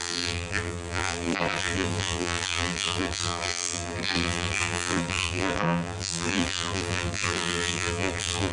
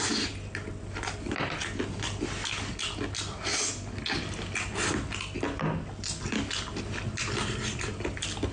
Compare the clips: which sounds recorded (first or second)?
second